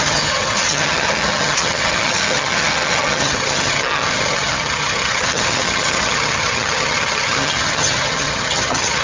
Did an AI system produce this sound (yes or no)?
yes